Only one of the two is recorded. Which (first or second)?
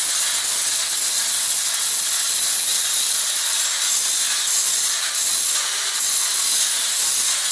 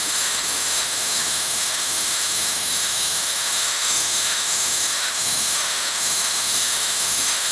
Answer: first